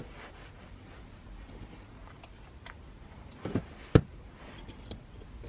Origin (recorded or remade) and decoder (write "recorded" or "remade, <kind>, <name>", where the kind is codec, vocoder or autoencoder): recorded